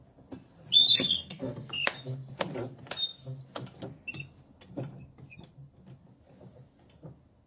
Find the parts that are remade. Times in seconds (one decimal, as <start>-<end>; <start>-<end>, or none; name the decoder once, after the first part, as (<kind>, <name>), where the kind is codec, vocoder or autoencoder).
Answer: 0.9-1.7 (codec, SNAC)